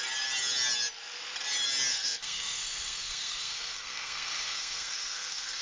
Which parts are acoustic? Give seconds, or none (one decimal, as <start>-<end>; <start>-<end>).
0.0-1.9